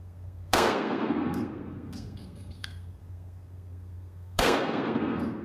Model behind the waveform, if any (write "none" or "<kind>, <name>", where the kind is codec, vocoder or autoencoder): codec, SNAC